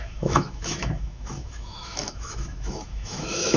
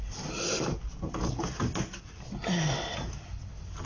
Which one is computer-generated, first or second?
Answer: first